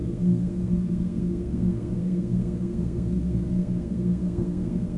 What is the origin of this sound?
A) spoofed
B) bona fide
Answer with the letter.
A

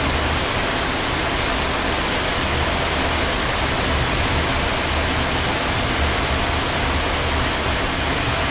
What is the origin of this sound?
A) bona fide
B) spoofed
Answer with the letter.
A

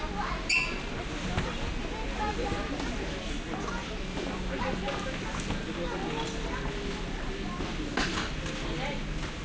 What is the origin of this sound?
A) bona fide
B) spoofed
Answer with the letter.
A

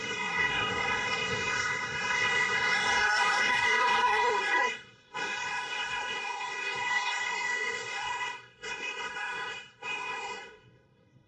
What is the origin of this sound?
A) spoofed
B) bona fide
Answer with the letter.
A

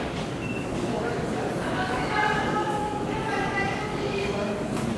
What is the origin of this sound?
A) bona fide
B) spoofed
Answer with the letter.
B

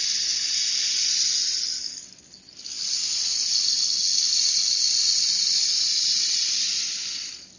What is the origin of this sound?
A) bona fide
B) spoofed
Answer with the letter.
A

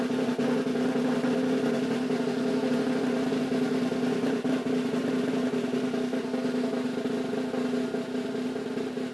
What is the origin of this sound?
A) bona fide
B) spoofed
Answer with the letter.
A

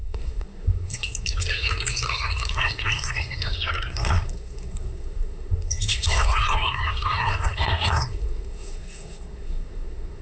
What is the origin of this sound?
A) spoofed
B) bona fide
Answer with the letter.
A